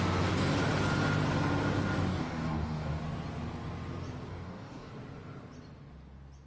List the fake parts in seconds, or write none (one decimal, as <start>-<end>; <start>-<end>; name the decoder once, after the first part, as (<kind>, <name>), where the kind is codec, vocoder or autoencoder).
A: 2.1-3.0 (codec, DAC); 4.3-4.9